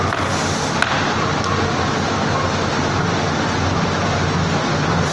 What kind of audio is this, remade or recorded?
recorded